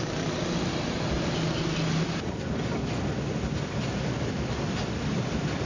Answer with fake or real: real